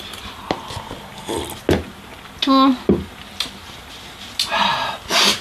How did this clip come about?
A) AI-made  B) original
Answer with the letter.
B